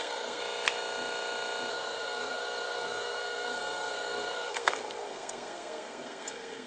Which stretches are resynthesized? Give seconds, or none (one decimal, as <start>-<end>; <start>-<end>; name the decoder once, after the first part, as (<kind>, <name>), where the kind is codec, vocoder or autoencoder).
0.0-0.4 (codec, SNAC); 1.7-6.7